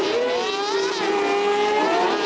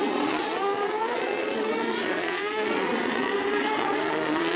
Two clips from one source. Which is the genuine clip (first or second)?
first